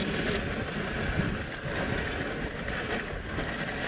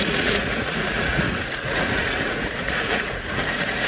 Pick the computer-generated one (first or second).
second